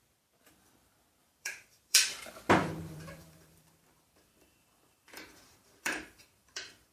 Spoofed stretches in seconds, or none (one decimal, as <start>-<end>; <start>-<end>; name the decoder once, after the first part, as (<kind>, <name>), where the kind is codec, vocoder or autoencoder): 1.2-2.0 (vocoder, BigVGAN v2); 2.6-6.9